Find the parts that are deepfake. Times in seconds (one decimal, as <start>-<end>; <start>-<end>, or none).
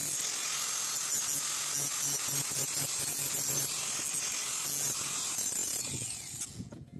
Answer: 5.6-7.0